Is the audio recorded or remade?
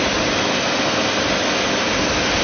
recorded